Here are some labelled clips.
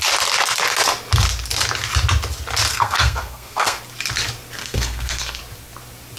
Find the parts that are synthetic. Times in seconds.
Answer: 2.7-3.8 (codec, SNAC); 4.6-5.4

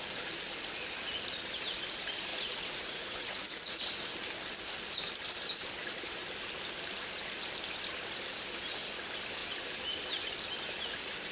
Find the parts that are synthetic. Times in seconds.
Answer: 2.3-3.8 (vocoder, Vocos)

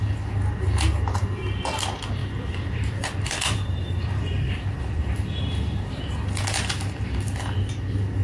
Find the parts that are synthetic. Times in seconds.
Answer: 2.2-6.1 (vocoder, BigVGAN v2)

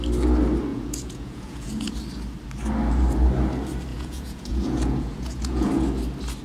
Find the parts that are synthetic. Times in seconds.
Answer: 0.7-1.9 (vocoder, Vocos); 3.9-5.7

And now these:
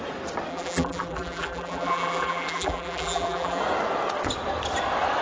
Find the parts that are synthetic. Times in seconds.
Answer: 0.5-3.6 (vocoder, BigVGAN v2)

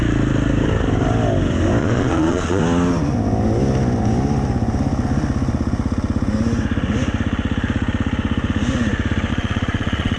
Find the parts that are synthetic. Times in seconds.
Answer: 1.8-2.6 (vocoder, Vocos); 9.3-10.2

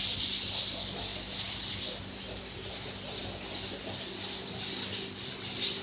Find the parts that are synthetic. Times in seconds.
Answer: none